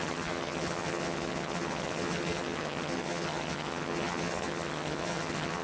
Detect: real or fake fake